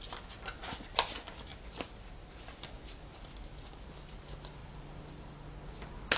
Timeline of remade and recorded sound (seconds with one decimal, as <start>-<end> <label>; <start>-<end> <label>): 0.0-4.6 recorded; 4.6-5.1 remade; 5.1-6.2 recorded

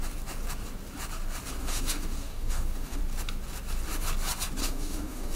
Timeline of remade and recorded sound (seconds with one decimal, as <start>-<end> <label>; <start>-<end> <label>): 0.0-1.6 recorded; 1.6-3.0 remade; 3.0-4.6 recorded; 4.6-5.4 remade